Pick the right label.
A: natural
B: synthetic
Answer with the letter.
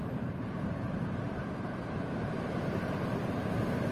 B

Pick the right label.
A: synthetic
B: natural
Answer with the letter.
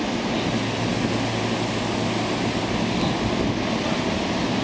B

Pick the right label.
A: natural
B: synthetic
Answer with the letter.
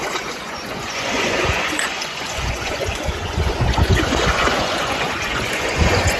B